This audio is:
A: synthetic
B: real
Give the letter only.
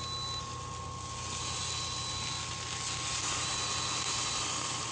B